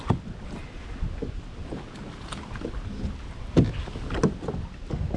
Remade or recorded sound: recorded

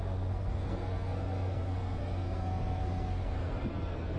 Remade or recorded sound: remade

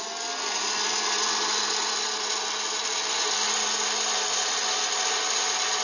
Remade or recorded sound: recorded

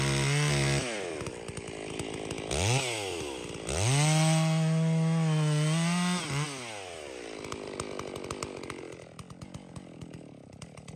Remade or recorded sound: recorded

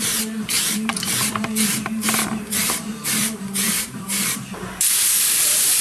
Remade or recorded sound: remade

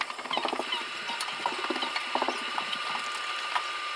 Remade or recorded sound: recorded